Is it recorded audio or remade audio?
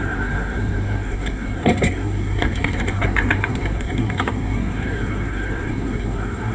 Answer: remade